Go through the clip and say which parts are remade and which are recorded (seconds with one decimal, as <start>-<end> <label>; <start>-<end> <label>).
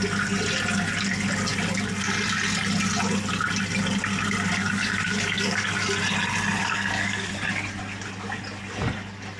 0.0-4.6 recorded; 4.6-5.8 remade; 5.8-6.6 recorded; 6.6-7.3 remade; 7.3-9.4 recorded